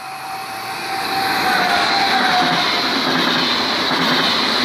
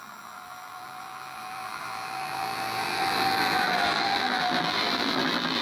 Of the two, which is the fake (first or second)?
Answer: second